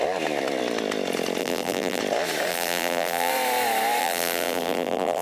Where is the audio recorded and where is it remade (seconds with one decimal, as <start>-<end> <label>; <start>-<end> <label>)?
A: 0.0-1.4 recorded; 1.4-2.0 remade; 2.0-2.5 recorded; 2.5-3.3 remade; 3.3-4.0 recorded; 4.0-5.2 remade

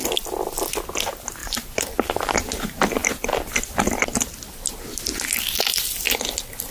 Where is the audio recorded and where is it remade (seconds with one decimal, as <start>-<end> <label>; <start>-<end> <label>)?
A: 0.0-1.4 recorded; 1.4-1.9 remade; 1.9-6.7 recorded

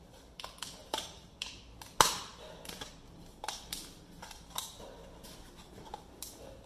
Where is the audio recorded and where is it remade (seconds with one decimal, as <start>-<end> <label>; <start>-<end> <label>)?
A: 0.0-0.8 recorded; 0.8-1.6 remade; 1.6-6.7 recorded

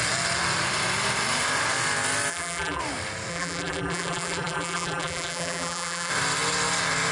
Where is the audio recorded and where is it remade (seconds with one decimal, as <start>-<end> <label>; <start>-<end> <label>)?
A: 0.0-2.3 recorded; 2.3-2.8 remade; 2.8-3.3 recorded; 3.3-6.1 remade; 6.1-7.1 recorded

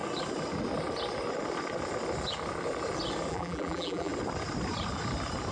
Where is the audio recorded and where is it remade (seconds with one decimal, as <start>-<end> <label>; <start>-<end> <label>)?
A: 0.0-3.3 recorded; 3.3-4.1 remade; 4.1-5.5 recorded

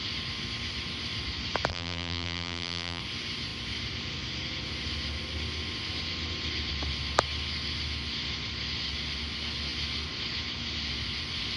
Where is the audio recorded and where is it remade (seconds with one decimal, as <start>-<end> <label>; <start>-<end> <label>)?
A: 0.0-1.7 recorded; 1.7-3.0 remade; 3.0-11.6 recorded

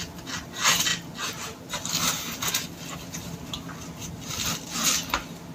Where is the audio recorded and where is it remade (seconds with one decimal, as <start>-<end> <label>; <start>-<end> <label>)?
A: 0.0-5.5 recorded